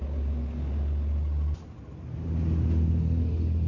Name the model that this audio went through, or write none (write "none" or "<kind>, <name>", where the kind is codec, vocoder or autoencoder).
none